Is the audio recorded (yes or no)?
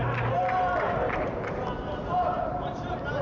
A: yes